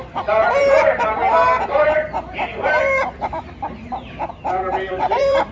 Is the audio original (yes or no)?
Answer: no